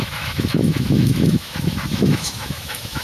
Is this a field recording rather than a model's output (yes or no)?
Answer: no